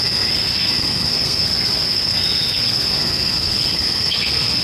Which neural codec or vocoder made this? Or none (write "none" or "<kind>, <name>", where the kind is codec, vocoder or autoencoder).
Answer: codec, SNAC